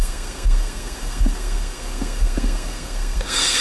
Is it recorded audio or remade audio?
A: remade